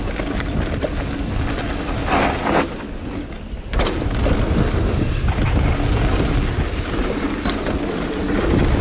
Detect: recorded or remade recorded